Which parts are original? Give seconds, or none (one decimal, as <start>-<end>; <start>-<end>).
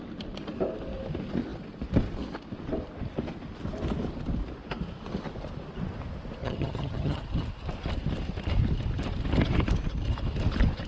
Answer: 0.0-6.4; 7.2-10.9